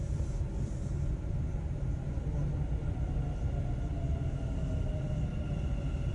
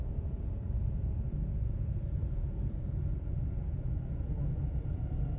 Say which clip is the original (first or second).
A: first